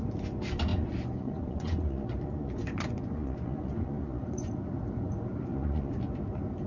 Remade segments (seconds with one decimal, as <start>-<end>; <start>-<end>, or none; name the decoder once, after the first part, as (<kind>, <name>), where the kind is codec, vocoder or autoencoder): 0.7-4.5 (vocoder, Vocos); 5.5-6.1